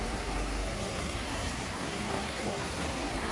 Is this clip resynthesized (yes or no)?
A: yes